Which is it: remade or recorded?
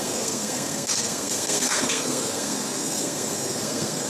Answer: remade